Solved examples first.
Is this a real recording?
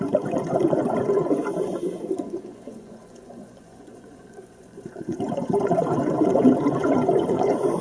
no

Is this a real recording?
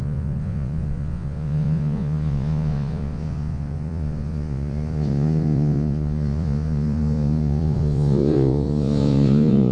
no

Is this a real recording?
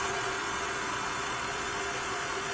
no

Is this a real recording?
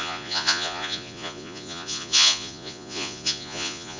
no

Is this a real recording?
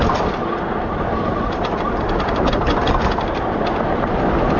yes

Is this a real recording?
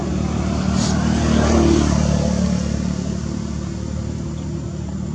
yes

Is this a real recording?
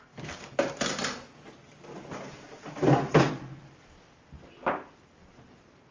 yes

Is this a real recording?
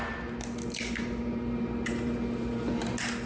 yes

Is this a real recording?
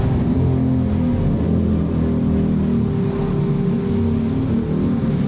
yes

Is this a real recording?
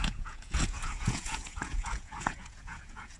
no